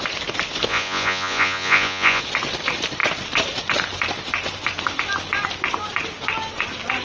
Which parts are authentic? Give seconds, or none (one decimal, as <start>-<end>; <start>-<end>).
0.0-0.7; 2.2-7.0